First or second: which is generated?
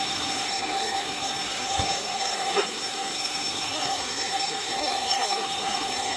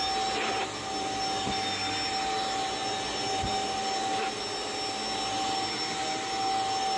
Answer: first